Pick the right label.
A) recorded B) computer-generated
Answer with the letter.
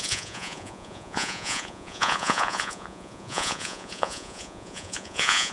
B